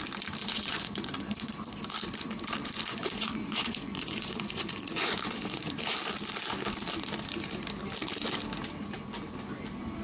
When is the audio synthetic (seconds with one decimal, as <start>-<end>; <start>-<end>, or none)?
0.4-1.1; 2.9-5.6